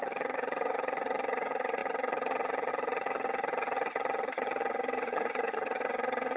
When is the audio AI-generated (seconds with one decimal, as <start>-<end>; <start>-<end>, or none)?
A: 0.0-6.4